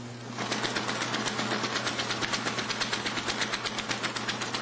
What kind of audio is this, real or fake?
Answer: real